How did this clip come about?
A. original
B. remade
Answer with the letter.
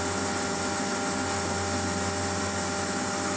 A